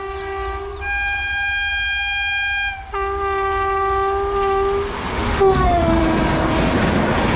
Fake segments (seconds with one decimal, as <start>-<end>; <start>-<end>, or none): 5.1-6.0